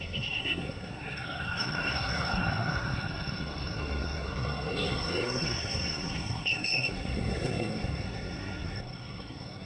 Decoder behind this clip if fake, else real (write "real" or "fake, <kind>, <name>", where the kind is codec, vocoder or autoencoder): fake, codec, SNAC